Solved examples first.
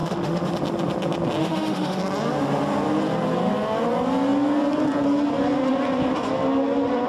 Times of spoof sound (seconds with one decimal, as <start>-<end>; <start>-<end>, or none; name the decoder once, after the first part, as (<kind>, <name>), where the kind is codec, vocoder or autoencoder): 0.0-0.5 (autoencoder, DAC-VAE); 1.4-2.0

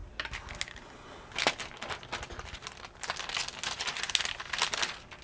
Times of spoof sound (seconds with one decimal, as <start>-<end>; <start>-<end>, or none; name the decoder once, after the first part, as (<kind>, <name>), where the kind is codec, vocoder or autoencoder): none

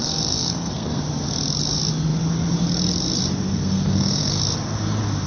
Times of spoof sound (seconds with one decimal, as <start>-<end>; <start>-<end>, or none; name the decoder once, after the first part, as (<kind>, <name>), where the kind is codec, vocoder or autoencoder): 0.0-1.0 (codec, SNAC); 3.5-4.4

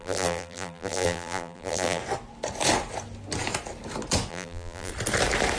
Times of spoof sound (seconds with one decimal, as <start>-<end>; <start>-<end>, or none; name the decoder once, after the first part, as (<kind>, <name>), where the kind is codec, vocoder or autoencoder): 0.0-2.0 (vocoder, BigVGAN v2); 4.3-4.9

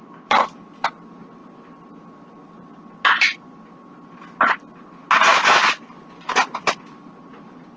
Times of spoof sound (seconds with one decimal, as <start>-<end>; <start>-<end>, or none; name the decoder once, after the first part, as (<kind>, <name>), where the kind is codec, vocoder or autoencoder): none

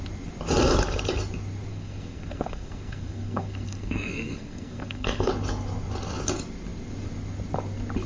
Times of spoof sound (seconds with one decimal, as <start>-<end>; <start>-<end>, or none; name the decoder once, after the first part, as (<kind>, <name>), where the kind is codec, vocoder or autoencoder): 1.7-5.3 (codec, SNAC)

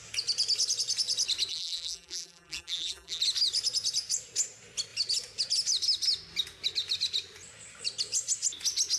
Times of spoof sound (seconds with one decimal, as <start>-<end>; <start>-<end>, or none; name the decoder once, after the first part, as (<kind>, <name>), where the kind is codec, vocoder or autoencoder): 1.5-3.2 (vocoder, BigVGAN v2)

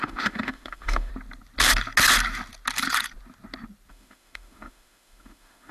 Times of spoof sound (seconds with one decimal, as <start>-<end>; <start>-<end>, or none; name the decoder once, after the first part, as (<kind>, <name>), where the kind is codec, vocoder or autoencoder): 0.0-1.1 (autoencoder, DAC-VAE); 3.9-5.7